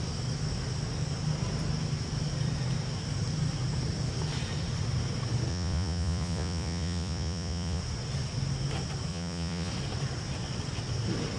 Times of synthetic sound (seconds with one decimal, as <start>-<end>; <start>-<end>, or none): 5.5-7.8; 9.1-9.7